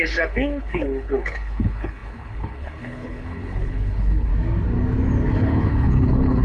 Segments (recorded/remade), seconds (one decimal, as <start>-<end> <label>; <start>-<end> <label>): 0.0-4.3 remade; 4.3-5.4 recorded; 5.4-6.4 remade